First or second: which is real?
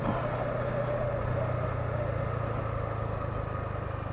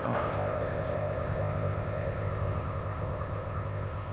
first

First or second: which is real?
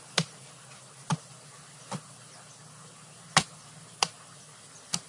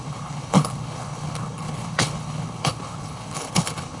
first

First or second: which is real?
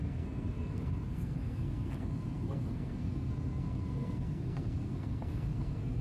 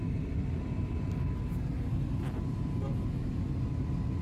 second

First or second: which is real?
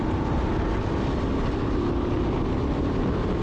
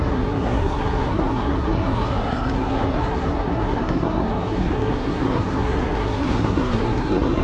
first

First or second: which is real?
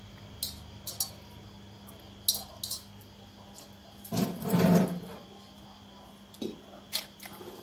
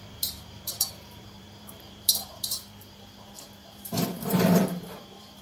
first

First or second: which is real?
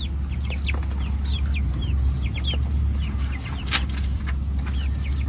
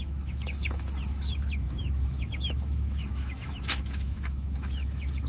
first